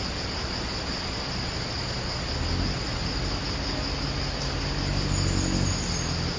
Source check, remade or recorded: recorded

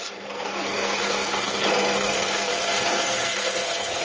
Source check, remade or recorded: remade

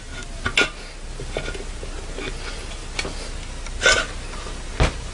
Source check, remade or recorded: recorded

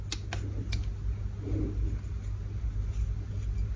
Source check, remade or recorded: recorded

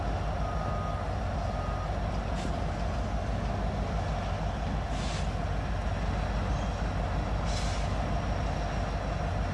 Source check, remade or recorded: recorded